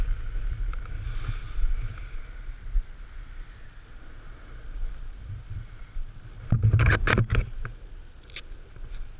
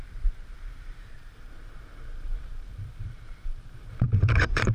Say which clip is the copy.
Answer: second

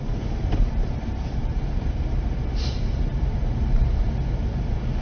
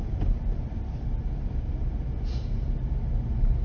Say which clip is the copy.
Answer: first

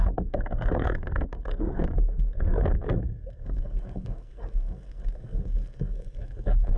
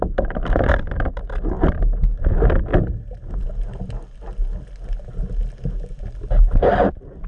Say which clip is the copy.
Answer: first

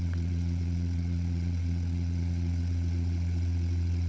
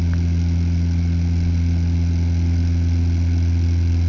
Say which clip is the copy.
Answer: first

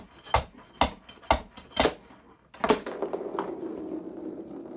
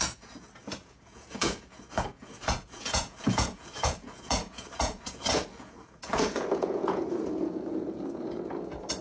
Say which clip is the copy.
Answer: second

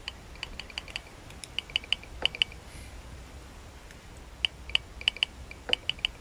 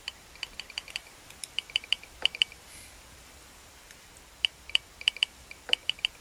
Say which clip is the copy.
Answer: second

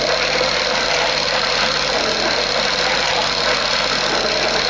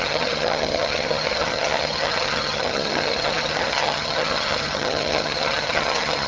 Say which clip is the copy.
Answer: second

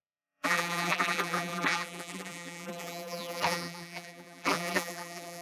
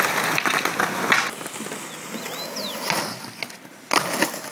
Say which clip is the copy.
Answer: first